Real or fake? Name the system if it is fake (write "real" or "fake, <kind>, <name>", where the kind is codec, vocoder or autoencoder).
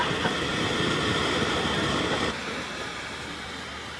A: fake, vocoder, BigVGAN v2